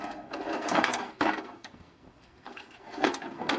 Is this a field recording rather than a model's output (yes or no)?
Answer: no